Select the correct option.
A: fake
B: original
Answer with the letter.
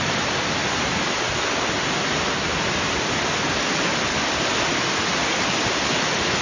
B